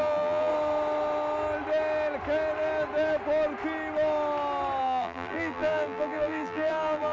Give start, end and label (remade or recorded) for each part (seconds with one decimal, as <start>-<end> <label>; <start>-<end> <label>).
0.0-0.5 remade; 0.5-4.8 recorded; 4.8-7.1 remade